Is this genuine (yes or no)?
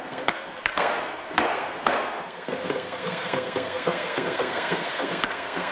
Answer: no